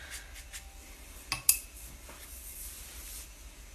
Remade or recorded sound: recorded